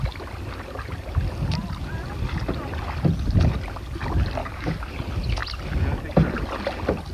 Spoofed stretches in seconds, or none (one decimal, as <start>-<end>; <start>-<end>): 4.4-4.9